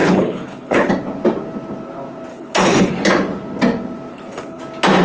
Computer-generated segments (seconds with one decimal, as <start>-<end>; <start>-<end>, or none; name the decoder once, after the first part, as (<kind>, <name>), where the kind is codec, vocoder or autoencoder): 0.0-0.9 (codec, HILCodec); 2.3-2.9; 4.1-4.6